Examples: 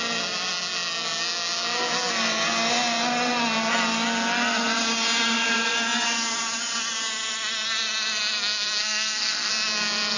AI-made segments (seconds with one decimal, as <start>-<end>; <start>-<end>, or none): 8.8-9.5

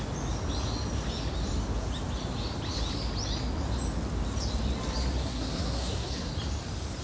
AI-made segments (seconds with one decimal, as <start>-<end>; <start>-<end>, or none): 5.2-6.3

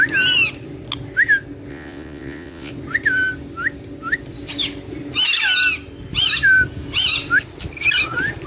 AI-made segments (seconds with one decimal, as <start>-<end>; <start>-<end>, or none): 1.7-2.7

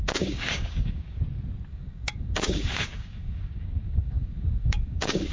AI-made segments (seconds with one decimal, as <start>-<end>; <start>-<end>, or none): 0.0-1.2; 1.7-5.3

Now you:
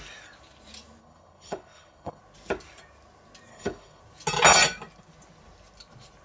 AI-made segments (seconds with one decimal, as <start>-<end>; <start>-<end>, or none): 1.0-2.2; 3.5-4.0

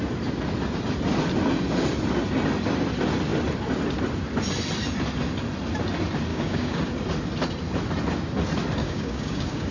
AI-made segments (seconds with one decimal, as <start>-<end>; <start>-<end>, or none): 6.3-6.8; 8.8-9.7